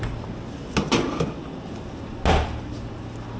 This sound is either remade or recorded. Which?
recorded